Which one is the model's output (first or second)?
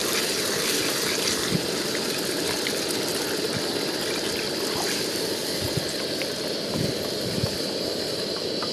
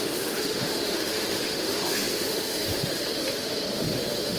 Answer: second